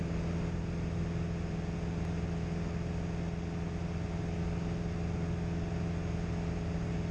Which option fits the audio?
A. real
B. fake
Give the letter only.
A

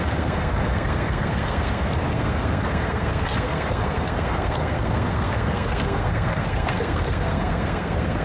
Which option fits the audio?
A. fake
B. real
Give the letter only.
A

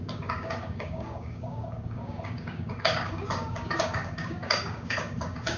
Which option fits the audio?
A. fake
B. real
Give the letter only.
A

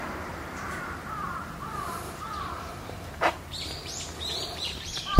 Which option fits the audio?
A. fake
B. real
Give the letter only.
A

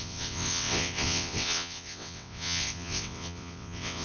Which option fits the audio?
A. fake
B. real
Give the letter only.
A